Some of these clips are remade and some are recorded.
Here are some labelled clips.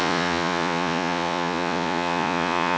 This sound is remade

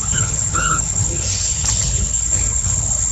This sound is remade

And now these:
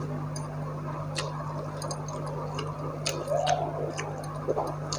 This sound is recorded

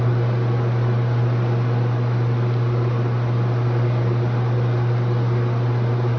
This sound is recorded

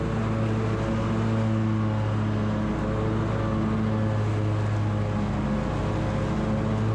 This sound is recorded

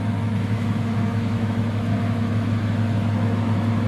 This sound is remade